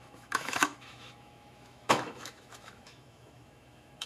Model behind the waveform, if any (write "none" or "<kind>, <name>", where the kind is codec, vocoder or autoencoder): autoencoder, DAC-VAE